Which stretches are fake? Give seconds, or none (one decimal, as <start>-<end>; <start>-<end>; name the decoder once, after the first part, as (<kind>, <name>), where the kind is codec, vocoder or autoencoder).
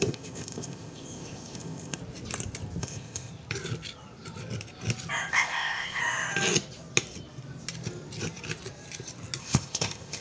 0.0-2.0 (codec, ZipCodec); 2.8-3.3; 5.3-6.0; 9.4-10.2